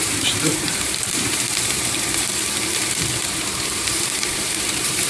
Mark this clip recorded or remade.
remade